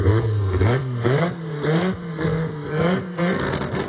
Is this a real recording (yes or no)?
no